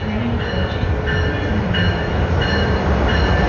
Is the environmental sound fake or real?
real